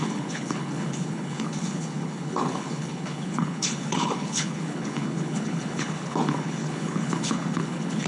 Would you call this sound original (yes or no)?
no